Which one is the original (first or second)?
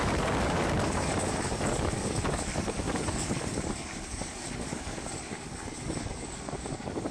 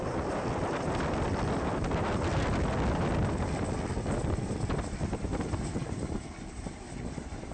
second